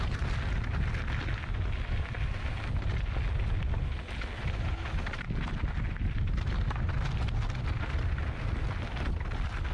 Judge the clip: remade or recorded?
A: recorded